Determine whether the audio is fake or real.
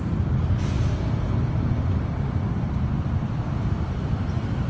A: fake